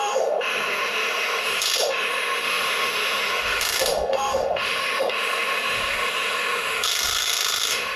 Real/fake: fake